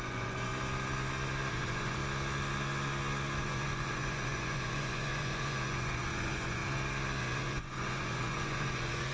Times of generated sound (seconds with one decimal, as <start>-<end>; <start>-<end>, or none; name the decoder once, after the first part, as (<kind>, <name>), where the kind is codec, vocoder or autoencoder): 0.0-0.5 (vocoder, Vocos); 1.5-2.0; 3.4-6.6; 7.2-9.1